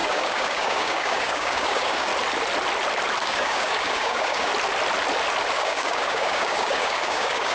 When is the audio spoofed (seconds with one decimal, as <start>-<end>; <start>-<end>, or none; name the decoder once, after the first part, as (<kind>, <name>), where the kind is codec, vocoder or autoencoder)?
0.0-2.1 (codec, DAC); 3.2-4.5; 5.5-7.5